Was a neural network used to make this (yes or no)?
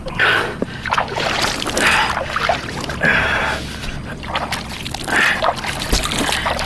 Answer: no